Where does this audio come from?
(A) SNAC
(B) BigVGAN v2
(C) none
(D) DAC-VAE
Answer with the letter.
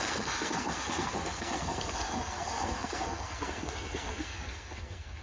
A